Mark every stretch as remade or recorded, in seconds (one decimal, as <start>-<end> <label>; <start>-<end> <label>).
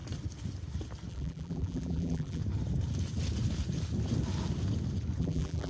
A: 0.0-1.1 recorded; 1.1-2.4 remade; 2.4-5.2 recorded; 5.2-5.7 remade